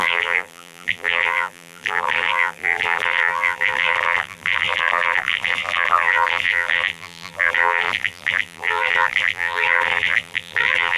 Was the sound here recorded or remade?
remade